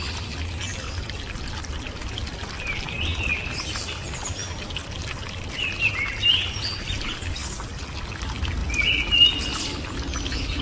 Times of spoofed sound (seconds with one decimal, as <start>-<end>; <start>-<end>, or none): none